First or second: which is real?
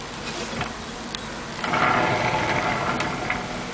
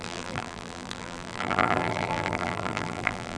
first